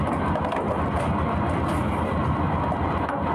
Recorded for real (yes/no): yes